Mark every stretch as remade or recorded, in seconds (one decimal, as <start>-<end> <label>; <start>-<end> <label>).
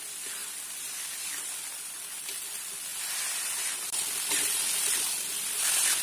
0.0-0.4 remade; 0.4-1.4 recorded; 1.4-6.0 remade